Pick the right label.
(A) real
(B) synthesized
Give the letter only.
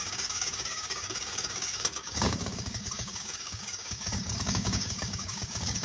B